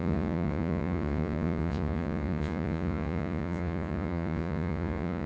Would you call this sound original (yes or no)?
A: no